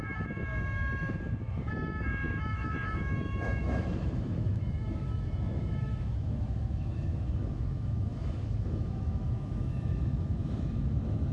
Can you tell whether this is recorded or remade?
remade